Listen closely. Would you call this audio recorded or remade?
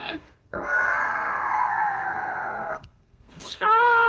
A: remade